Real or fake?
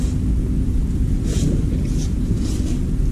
real